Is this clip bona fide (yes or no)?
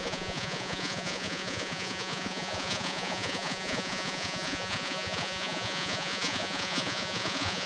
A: no